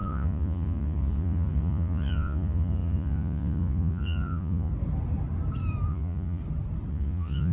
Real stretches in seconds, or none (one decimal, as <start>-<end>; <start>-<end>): 4.7-5.9; 6.4-6.9